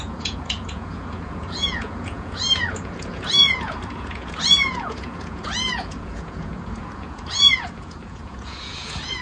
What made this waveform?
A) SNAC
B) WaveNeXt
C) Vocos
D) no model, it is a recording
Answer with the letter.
C